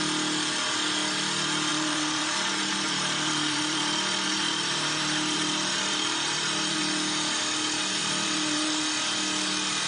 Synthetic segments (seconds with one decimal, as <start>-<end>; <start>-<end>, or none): 1.7-6.8; 8.0-8.8